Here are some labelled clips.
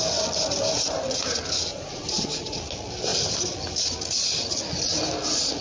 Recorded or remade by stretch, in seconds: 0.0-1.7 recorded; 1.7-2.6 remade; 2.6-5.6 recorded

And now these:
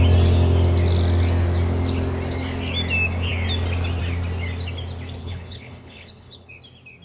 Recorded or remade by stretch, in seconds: 0.0-5.2 recorded; 5.2-6.5 remade; 6.5-7.0 recorded

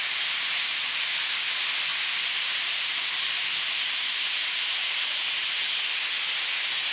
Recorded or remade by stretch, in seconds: 0.0-0.6 recorded; 0.6-1.1 remade; 1.1-1.9 recorded; 1.9-3.8 remade; 3.8-6.9 recorded

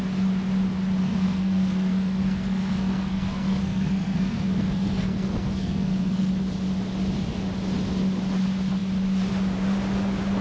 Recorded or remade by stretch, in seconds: 0.0-1.0 recorded; 1.0-6.3 remade; 6.3-10.4 recorded